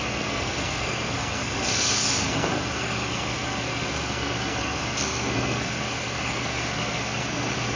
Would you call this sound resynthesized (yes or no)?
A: yes